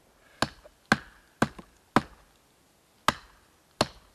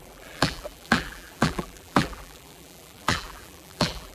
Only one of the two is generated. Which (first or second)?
second